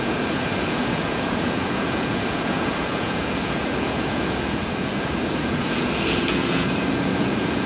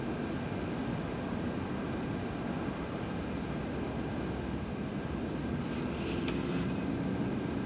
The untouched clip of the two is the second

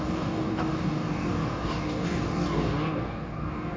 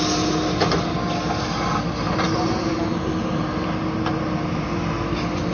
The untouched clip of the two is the second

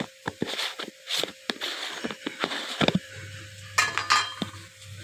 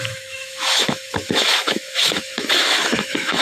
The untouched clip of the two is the first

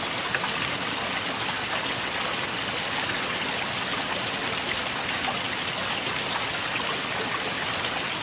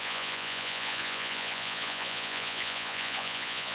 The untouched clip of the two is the first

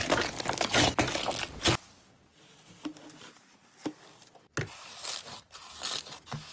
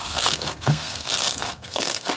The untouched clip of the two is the first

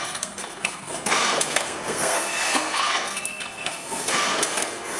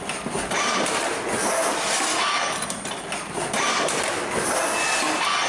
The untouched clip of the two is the second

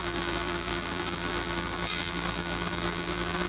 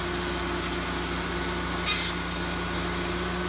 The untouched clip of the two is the second